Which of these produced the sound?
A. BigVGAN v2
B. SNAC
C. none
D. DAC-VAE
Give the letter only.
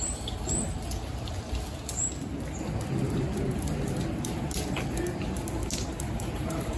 C